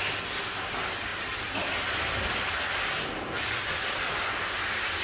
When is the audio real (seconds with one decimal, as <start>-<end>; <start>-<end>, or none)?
0.0-5.0